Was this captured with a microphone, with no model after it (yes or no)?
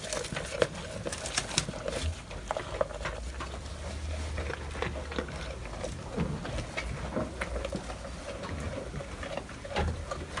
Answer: yes